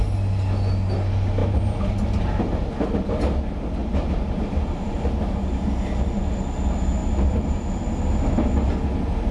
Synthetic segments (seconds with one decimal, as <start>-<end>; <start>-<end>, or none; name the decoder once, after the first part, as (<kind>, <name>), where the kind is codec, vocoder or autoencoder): 3.8-5.9 (vocoder, BigVGAN v2); 7.0-7.9